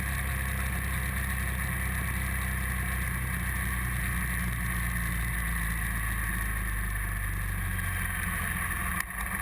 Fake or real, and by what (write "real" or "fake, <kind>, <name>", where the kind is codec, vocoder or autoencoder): real